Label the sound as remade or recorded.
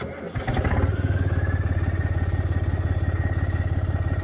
recorded